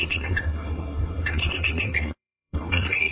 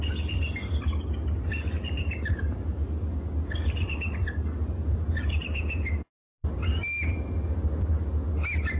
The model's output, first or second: first